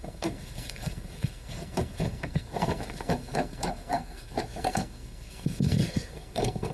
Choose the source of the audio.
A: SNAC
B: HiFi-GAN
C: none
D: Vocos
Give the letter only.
A